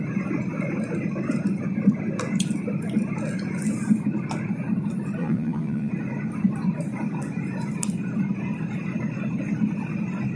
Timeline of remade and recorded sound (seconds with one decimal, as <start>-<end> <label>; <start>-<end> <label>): 0.0-5.2 recorded; 5.2-5.9 remade; 5.9-10.4 recorded